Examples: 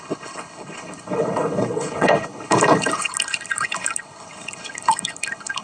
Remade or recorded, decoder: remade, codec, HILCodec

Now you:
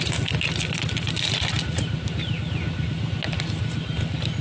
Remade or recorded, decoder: recorded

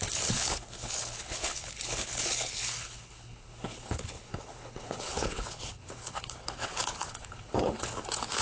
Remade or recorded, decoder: remade, codec, HILCodec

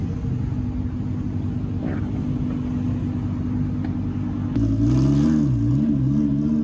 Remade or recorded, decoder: recorded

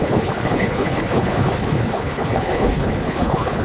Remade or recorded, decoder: remade, codec, HILCodec